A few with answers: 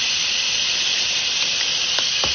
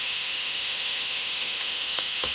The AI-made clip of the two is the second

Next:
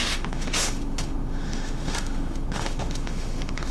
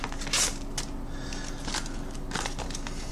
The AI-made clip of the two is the first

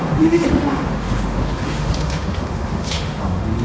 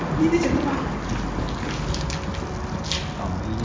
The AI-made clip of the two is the first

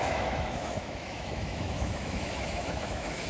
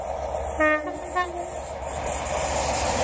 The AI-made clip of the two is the first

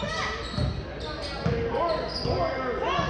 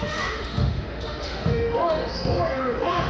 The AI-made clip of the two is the second